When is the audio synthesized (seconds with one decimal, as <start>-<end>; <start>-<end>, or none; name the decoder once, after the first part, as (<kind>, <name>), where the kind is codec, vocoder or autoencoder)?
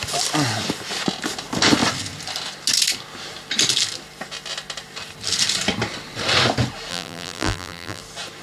6.9-8.0 (vocoder, BigVGAN v2)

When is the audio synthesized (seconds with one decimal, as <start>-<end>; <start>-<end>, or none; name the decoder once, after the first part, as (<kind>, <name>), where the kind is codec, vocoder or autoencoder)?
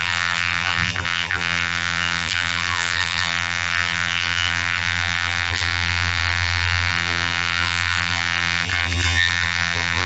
0.0-10.1 (vocoder, BigVGAN v2)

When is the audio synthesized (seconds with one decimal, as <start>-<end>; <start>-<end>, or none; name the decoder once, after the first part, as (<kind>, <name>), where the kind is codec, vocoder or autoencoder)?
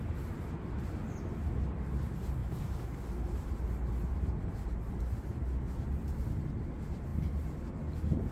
2.4-3.6 (vocoder, BigVGAN v2); 4.1-5.0